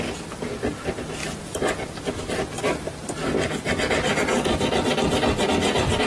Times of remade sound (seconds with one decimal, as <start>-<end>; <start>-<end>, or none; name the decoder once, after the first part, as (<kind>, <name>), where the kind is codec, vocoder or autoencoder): none